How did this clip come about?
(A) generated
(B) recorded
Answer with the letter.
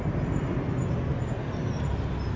B